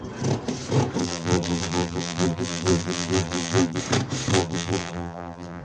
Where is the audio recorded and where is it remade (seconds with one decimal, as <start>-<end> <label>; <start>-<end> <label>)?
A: 0.0-1.0 recorded; 1.0-3.8 remade; 3.8-4.3 recorded; 4.3-5.6 remade